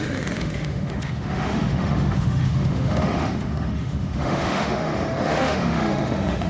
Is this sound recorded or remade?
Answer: remade